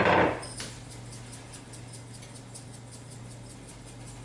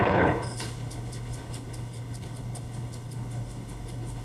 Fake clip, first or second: second